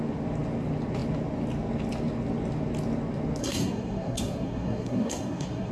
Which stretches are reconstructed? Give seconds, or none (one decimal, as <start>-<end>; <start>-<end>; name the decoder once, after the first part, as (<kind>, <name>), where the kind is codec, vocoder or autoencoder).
3.4-5.7 (codec, SNAC)